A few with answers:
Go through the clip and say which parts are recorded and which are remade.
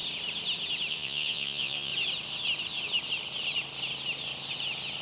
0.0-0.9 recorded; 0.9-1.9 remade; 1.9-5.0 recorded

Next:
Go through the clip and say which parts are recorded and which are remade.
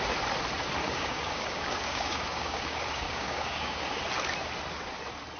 0.0-0.8 recorded; 0.8-4.0 remade; 4.0-5.4 recorded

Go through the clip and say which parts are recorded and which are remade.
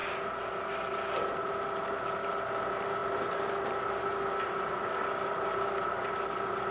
0.0-6.7 recorded